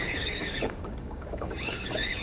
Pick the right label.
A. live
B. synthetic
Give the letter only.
B